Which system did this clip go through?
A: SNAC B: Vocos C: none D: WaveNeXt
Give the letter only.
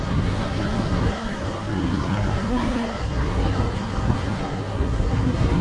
A